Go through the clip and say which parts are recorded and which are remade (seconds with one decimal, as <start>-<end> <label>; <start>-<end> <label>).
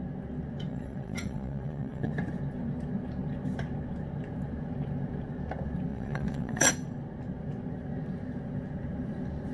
0.0-0.7 recorded; 0.7-2.1 remade; 2.1-5.9 recorded; 5.9-6.7 remade; 6.7-9.5 recorded